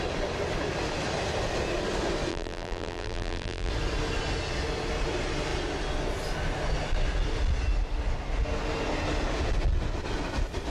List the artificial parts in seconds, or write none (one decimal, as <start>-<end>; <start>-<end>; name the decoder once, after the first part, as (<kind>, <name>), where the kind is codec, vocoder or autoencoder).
2.3-3.7 (vocoder, BigVGAN v2)